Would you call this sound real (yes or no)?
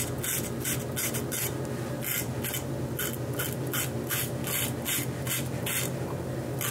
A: yes